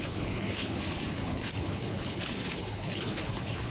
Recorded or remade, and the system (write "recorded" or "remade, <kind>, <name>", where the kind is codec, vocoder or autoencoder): remade, codec, HILCodec